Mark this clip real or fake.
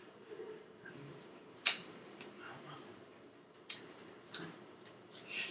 fake